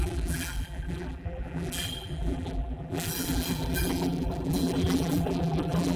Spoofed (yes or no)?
yes